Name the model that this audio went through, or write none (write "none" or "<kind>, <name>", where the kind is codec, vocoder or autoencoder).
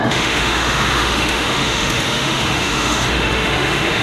autoencoder, DAC-VAE